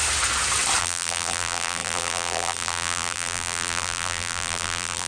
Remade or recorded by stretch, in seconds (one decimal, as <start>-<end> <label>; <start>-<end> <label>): 0.0-0.8 recorded; 0.8-5.1 remade